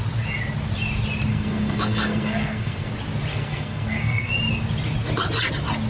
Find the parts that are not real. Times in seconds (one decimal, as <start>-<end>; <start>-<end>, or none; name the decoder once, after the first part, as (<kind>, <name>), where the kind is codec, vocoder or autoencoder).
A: 1.3-2.9 (codec, SNAC); 3.3-4.3